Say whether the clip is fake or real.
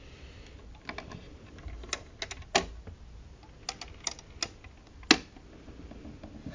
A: real